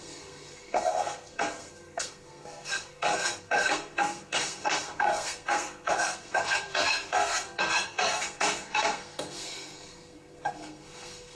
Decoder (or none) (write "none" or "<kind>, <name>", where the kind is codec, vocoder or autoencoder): codec, SNAC